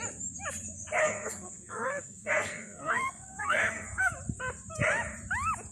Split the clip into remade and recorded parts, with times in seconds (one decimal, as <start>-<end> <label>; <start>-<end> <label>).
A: 0.0-1.0 recorded; 1.0-4.1 remade; 4.1-5.7 recorded